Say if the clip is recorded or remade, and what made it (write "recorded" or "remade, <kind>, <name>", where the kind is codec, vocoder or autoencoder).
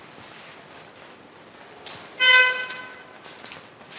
recorded